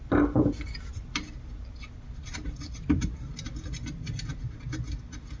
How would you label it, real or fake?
real